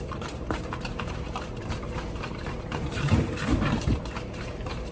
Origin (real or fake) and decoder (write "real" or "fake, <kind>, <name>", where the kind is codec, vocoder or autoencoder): fake, vocoder, BigVGAN v2